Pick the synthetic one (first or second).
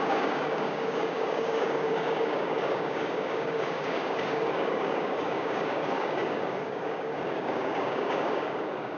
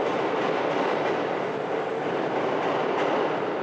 first